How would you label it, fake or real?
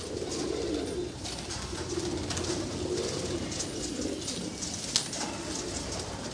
real